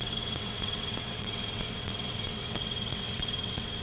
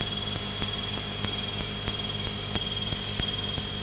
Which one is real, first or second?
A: second